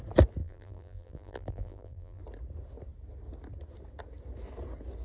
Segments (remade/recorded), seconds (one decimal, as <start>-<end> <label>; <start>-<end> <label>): 0.0-0.4 recorded; 0.4-2.2 remade; 2.2-5.0 recorded